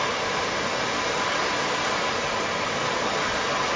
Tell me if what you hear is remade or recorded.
recorded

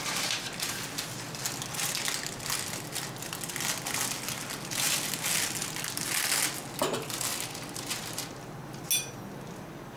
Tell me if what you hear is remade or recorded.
recorded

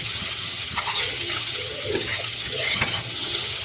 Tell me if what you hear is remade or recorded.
remade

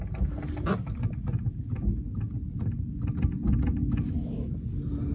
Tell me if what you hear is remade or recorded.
recorded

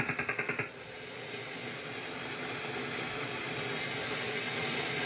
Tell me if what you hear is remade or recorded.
recorded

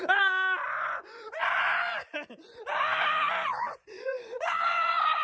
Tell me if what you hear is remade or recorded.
remade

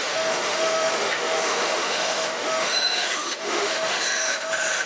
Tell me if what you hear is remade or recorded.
remade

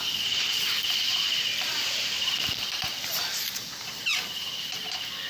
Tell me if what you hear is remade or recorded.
remade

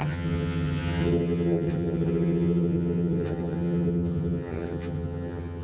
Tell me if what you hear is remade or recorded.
remade